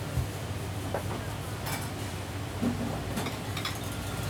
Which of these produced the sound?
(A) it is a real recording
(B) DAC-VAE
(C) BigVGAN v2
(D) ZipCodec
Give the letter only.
A